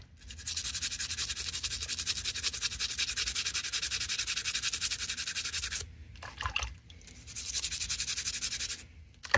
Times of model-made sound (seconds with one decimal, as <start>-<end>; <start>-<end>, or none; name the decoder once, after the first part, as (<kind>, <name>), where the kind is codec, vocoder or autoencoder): none